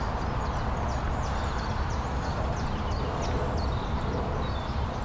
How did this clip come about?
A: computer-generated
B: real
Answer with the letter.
B